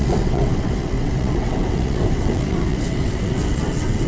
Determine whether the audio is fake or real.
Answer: fake